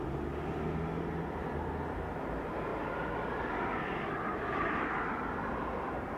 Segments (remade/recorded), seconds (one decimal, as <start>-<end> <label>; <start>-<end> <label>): 0.0-6.2 recorded